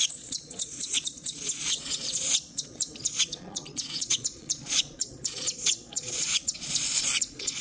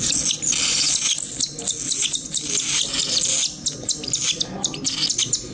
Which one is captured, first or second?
second